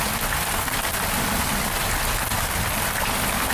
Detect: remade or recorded recorded